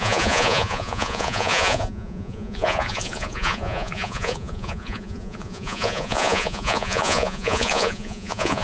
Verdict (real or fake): fake